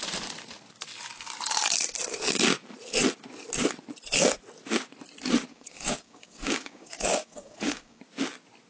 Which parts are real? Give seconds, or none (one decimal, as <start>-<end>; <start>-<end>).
0.0-5.5; 8.0-8.7

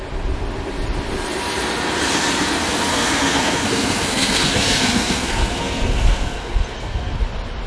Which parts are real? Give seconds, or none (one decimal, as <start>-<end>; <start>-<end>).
0.0-2.9; 7.2-7.7

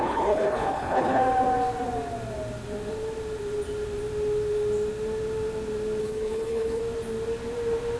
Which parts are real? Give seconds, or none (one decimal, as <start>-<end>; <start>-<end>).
1.2-6.0; 6.8-8.0

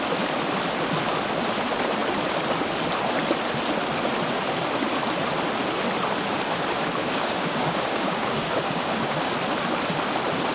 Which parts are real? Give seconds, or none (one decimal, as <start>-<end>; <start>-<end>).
0.0-7.0; 9.3-10.5

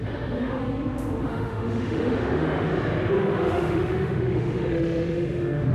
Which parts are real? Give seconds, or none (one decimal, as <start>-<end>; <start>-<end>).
0.6-1.2; 2.7-3.2

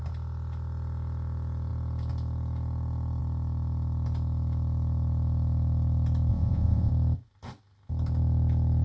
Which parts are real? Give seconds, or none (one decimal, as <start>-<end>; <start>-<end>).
0.0-6.3; 6.9-8.8